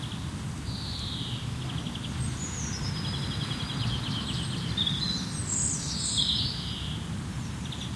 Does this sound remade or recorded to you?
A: recorded